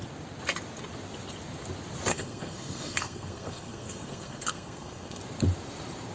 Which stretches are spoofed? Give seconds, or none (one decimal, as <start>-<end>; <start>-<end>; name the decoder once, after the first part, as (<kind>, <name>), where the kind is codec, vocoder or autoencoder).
2.1-5.2 (codec, SNAC)

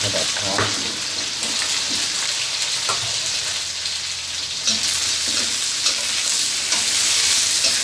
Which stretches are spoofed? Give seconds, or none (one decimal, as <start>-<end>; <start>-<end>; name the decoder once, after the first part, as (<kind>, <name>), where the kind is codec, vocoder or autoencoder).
none

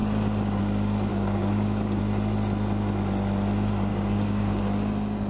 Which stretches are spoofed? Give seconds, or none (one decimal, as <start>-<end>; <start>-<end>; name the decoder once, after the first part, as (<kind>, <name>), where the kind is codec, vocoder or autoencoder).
1.1-2.0 (codec, DAC); 3.9-4.6